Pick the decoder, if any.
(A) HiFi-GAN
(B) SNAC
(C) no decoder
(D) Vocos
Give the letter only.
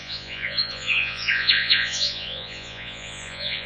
D